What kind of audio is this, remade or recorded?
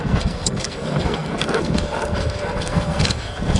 remade